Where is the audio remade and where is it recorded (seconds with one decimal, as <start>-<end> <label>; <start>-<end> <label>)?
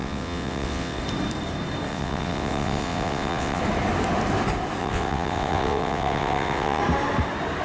0.0-1.0 remade; 1.0-1.9 recorded; 1.9-3.6 remade; 3.6-4.8 recorded; 4.8-6.8 remade; 6.8-7.6 recorded